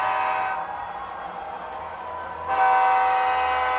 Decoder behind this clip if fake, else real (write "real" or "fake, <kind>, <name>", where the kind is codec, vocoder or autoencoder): real